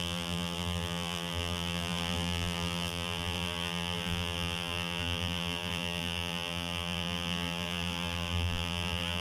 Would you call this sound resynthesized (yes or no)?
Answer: yes